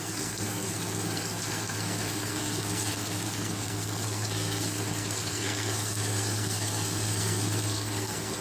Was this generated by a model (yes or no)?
yes